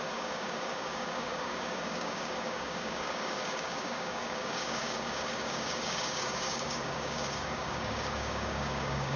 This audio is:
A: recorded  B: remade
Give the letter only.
B